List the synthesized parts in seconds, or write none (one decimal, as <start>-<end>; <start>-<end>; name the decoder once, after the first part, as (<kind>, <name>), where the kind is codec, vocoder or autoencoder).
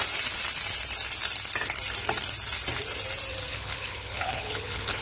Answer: 3.5-5.0 (codec, HILCodec)